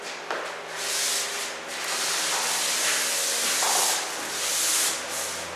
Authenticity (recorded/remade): recorded